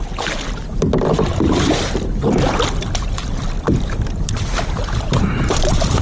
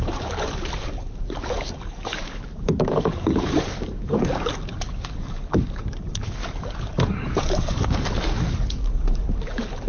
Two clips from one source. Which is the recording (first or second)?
first